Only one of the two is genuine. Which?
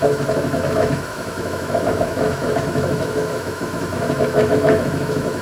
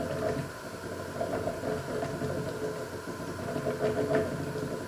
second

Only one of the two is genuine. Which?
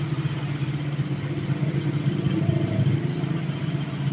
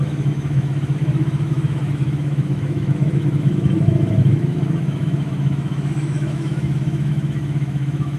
first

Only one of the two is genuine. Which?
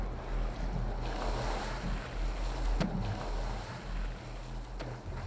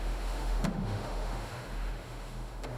first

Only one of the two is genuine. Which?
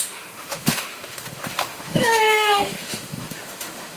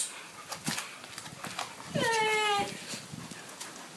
second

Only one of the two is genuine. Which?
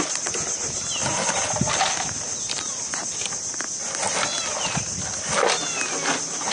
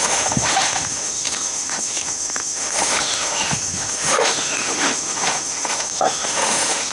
first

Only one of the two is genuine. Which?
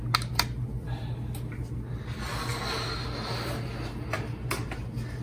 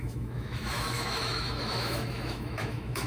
first